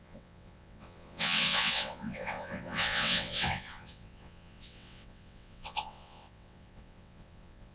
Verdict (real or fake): fake